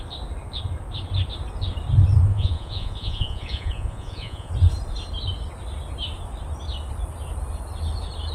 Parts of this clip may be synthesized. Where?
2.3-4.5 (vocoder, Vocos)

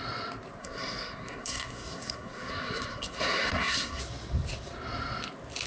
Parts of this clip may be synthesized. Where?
0.6-4.0 (codec, SNAC)

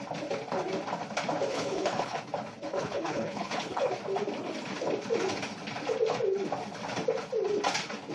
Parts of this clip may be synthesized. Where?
1.5-2.2 (codec, HILCodec); 2.7-3.9

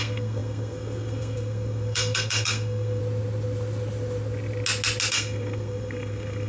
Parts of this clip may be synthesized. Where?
0.0-3.0 (codec, SNAC); 5.1-6.5

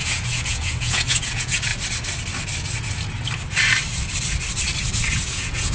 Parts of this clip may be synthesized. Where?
0.0-1.7 (vocoder, Vocos); 5.1-5.7

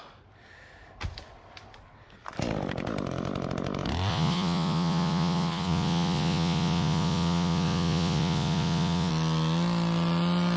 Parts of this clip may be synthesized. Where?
4.1-9.1 (vocoder, Vocos)

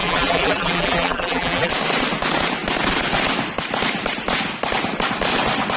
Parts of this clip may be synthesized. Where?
0.0-1.7 (vocoder, BigVGAN v2)